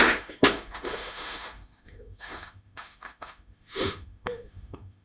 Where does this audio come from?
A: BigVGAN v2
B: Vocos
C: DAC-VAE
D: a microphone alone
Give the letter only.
C